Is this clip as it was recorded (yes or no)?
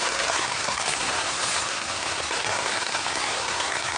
no